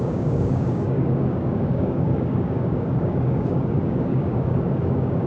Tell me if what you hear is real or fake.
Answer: fake